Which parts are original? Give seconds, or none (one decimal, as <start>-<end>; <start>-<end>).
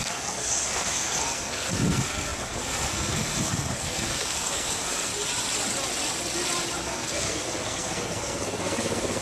5.1-6.8